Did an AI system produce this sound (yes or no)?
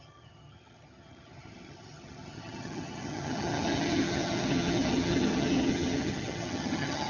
yes